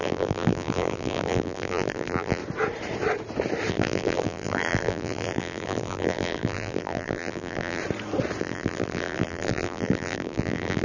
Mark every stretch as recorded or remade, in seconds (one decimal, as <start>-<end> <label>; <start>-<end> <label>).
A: 0.0-2.4 remade; 2.4-3.7 recorded; 3.7-7.8 remade; 7.8-8.4 recorded; 8.4-10.8 remade